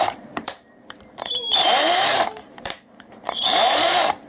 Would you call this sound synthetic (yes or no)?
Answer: yes